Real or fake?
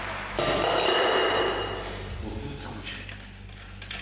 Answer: real